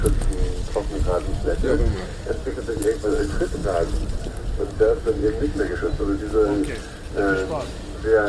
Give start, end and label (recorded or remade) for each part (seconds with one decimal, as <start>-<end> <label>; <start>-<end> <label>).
0.0-8.3 recorded